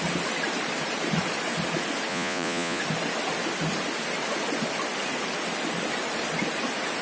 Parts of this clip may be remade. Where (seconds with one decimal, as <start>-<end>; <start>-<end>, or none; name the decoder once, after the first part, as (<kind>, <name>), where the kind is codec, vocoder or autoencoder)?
2.1-2.8 (vocoder, Vocos)